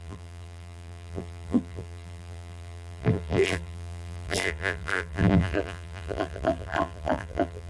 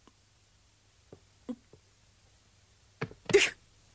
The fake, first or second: first